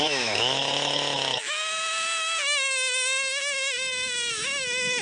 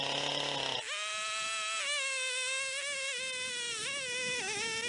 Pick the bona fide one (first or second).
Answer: second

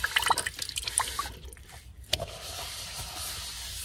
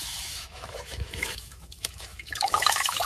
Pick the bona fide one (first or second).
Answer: first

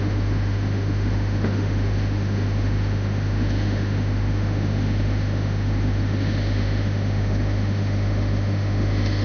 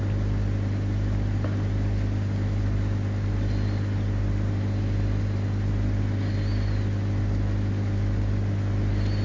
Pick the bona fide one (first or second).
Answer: second